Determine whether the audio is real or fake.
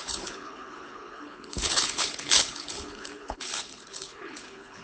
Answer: fake